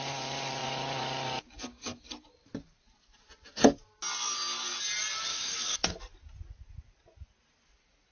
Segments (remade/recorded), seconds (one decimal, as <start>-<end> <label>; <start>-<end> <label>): 0.0-5.3 recorded; 5.3-6.0 remade; 6.0-8.1 recorded